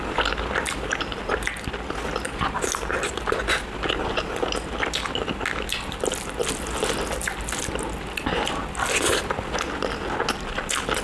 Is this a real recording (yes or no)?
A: yes